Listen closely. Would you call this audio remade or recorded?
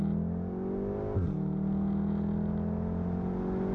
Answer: recorded